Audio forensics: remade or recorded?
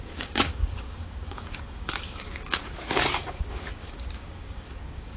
remade